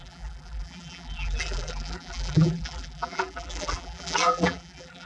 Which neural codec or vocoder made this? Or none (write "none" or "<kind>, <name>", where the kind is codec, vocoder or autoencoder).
vocoder, BigVGAN v2